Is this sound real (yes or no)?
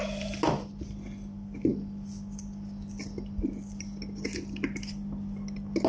yes